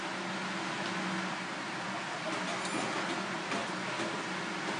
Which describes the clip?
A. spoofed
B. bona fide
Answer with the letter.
B